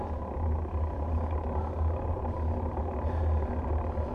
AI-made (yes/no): no